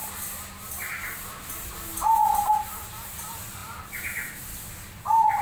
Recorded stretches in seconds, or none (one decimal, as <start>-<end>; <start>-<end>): 0.0-5.4